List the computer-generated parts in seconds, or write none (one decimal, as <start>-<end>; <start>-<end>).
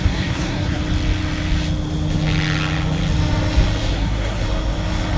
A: 0.0-0.8; 3.9-4.4